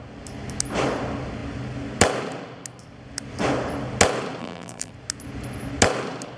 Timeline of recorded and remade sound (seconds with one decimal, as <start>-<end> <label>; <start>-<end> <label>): 0.0-4.4 recorded; 4.4-4.9 remade; 4.9-6.4 recorded